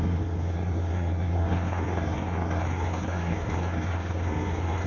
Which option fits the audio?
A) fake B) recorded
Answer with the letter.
A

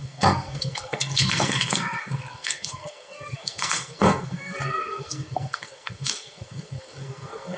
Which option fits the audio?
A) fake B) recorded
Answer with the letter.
A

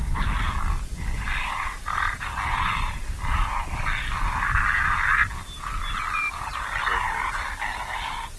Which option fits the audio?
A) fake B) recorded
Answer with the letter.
B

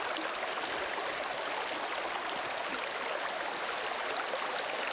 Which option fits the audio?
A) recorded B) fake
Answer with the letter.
A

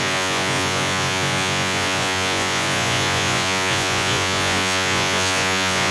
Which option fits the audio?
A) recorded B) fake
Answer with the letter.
B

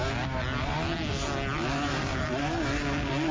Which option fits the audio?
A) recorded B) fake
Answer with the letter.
A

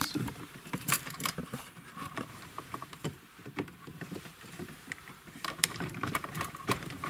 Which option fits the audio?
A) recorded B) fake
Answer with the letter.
B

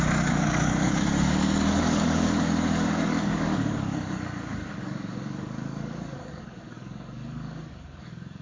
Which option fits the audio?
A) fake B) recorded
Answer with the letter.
A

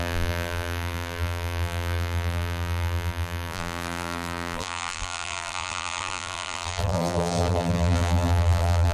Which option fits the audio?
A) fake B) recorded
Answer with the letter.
A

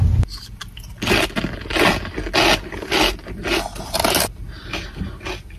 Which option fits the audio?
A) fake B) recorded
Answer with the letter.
B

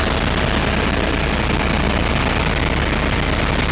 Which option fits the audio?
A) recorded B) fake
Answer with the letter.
A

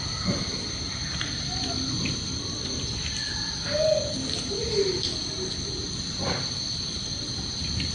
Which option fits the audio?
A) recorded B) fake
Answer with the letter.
B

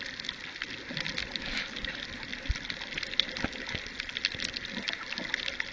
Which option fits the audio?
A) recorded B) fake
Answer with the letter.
A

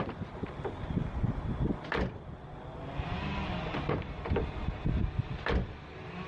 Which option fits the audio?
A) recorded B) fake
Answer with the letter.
A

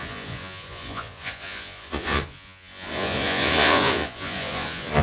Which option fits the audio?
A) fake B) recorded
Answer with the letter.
A